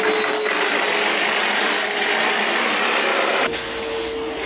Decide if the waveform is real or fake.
real